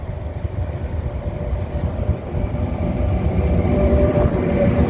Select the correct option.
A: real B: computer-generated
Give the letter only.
B